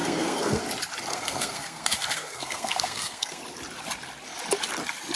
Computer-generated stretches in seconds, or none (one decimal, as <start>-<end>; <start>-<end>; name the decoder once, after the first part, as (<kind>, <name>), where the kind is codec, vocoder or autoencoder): 0.0-0.6 (codec, SNAC); 1.1-3.4